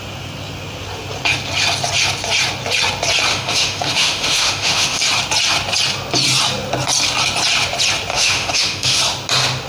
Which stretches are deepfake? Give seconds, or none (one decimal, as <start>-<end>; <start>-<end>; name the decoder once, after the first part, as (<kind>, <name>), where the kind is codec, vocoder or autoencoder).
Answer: 3.3-5.0 (autoencoder, DAC-VAE); 8.1-9.0